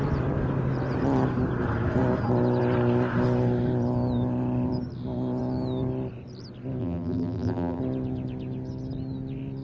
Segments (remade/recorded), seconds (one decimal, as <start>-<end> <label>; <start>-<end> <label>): 0.0-6.8 recorded; 6.8-7.8 remade; 7.8-9.6 recorded